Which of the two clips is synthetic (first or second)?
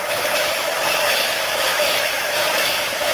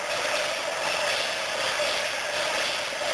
first